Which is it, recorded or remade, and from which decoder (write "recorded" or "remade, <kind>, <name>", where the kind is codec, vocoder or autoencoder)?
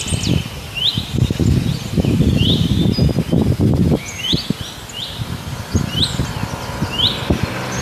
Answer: recorded